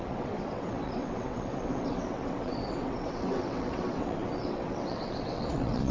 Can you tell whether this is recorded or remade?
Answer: remade